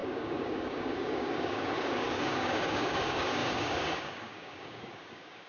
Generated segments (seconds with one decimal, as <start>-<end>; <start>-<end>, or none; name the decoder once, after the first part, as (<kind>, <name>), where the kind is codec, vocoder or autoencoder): 0.0-5.5 (codec, DAC)